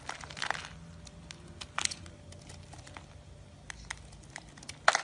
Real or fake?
real